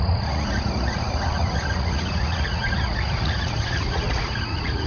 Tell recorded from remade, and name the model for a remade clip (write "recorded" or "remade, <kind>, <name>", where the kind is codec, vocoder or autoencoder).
remade, vocoder, Vocos